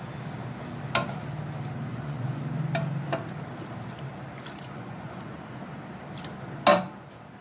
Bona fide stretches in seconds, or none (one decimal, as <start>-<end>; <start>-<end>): 0.0-1.9; 2.4-4.6; 5.6-7.4

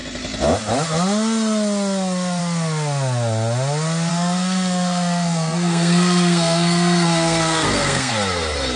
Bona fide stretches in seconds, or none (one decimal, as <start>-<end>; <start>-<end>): 0.0-4.1; 8.1-8.8

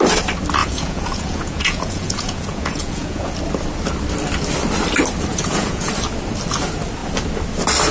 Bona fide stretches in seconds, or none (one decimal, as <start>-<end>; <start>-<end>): 0.0-0.6; 3.3-5.3; 5.9-7.9